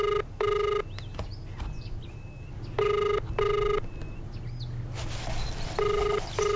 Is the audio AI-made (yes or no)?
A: no